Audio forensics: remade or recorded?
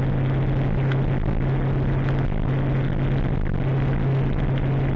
recorded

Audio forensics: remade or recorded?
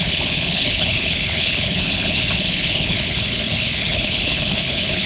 remade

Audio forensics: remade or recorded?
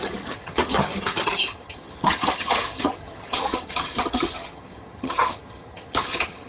remade